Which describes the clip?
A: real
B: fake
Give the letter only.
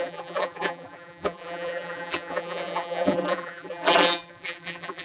B